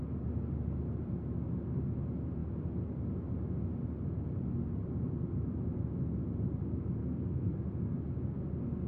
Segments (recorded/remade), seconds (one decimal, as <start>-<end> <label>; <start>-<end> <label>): 0.0-7.0 recorded; 7.0-7.5 remade; 7.5-8.9 recorded